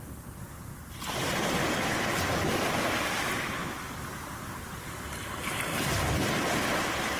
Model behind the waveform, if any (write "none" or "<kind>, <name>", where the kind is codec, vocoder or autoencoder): none